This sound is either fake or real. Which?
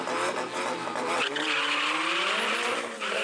real